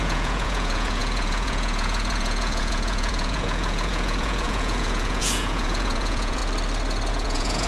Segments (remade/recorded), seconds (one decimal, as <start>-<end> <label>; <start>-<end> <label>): 0.0-6.4 remade; 6.4-7.1 recorded; 7.1-7.7 remade